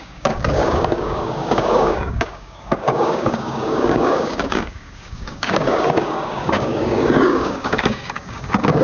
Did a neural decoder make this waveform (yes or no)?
yes